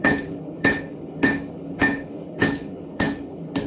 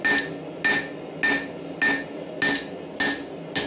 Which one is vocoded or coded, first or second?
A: first